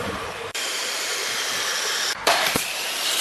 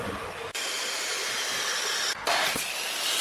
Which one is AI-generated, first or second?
first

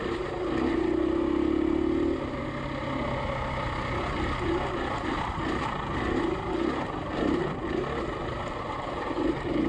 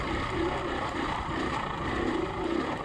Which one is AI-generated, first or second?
second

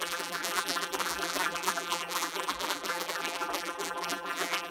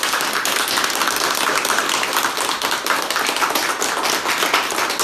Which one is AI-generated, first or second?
first